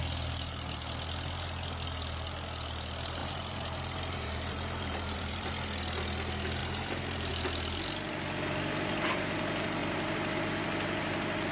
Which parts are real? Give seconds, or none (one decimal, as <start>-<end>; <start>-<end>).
0.0-3.2; 5.5-6.6; 7.3-11.5